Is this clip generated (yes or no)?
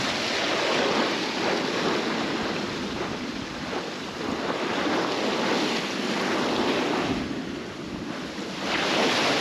no